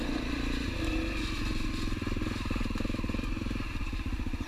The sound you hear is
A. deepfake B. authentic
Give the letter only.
B